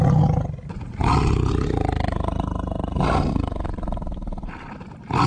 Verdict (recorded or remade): recorded